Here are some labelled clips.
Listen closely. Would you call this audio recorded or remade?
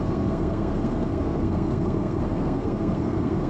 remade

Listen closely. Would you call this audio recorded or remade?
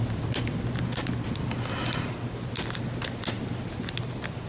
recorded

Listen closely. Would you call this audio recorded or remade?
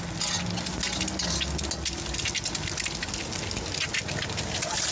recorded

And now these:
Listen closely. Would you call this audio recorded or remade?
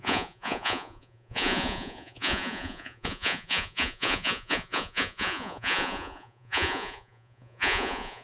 remade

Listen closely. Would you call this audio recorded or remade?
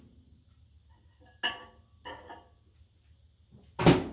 recorded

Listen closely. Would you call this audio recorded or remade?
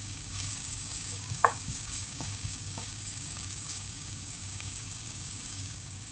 remade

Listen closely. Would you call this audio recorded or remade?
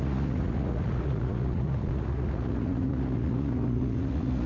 remade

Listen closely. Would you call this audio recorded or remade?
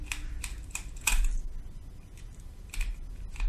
recorded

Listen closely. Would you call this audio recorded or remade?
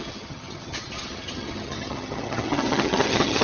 remade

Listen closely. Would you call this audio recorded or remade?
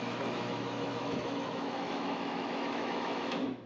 remade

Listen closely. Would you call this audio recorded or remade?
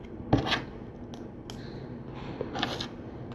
recorded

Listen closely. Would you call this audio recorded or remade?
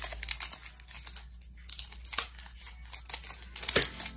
recorded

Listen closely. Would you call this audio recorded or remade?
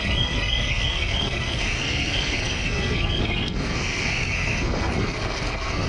remade